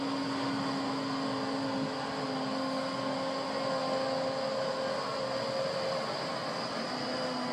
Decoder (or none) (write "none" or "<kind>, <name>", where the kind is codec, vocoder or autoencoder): none